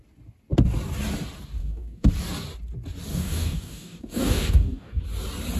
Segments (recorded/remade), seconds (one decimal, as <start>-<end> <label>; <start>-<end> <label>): 0.0-1.6 recorded; 1.6-2.1 remade; 2.1-3.1 recorded; 3.1-5.0 remade; 5.0-5.6 recorded